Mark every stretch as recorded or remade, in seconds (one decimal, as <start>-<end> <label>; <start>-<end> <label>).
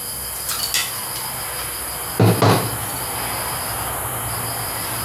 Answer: 0.0-5.0 recorded